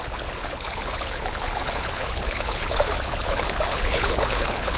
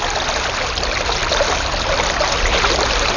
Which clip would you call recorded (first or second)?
second